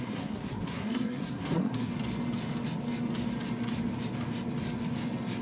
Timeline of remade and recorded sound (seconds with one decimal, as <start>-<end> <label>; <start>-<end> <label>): 0.0-1.9 remade; 1.9-5.4 recorded